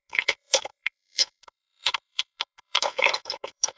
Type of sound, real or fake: fake